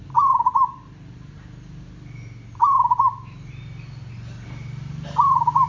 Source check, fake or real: real